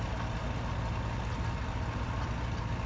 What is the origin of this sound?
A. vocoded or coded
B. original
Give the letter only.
B